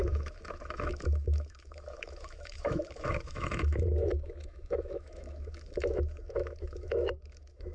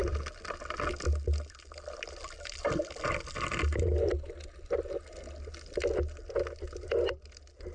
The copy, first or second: first